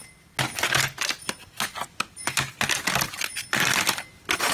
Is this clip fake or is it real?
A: real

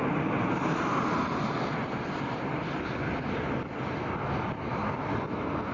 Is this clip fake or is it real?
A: real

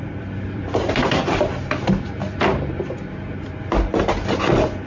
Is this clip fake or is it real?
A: fake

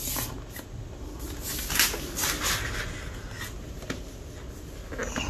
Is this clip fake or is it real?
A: real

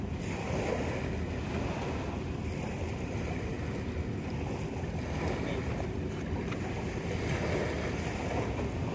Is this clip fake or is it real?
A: fake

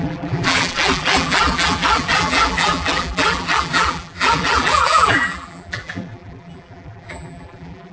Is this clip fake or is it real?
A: fake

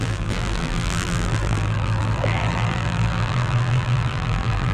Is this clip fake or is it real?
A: fake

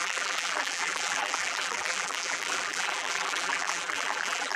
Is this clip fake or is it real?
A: fake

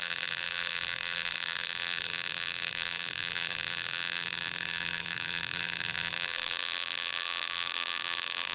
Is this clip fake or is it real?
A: fake